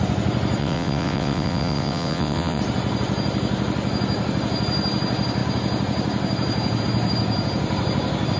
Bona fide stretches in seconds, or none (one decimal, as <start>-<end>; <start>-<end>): 0.0-0.6; 2.6-8.4

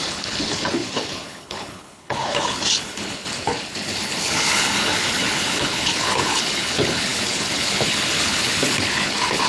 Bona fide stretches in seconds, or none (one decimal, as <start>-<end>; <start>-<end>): none

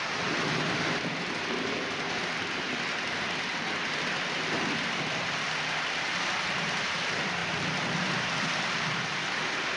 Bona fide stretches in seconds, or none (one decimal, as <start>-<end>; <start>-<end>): 7.4-8.3

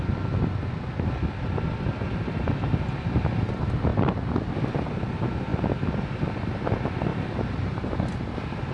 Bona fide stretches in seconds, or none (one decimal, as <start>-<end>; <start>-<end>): 0.0-7.1; 8.0-8.7

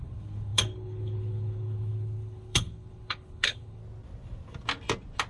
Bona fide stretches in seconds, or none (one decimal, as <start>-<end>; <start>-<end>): 3.8-5.3

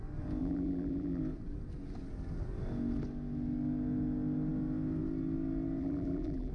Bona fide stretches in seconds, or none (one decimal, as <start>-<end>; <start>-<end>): 0.0-0.4; 1.2-5.8

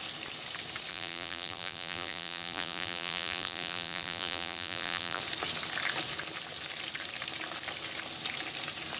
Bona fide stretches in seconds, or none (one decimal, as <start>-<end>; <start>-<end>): 0.0-0.9; 5.2-9.0